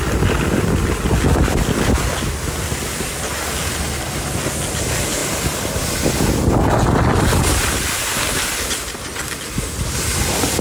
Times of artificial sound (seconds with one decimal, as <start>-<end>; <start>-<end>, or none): none